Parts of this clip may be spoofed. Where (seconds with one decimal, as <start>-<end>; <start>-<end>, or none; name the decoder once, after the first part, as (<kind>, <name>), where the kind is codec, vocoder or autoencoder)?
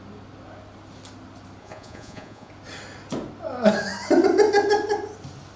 1.6-2.5 (vocoder, Vocos)